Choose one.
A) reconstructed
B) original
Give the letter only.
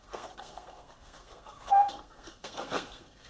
A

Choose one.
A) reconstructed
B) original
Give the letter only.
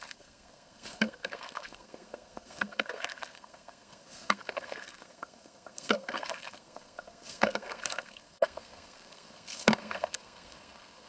A